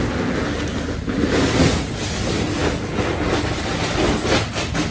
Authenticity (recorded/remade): recorded